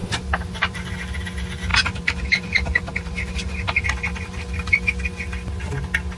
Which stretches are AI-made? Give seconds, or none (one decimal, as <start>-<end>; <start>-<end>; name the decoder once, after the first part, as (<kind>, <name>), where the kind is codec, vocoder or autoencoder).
0.0-0.8 (vocoder, BigVGAN v2); 1.7-4.4